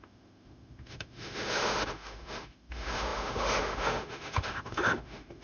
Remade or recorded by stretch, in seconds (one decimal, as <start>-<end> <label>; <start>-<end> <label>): 0.0-5.4 remade